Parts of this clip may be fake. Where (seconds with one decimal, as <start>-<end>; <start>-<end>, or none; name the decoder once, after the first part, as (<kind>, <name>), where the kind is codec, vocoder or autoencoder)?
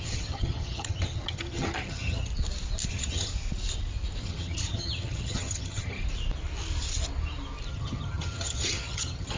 0.0-2.3 (vocoder, HiFi-GAN); 2.9-3.3; 4.2-6.0; 7.7-9.4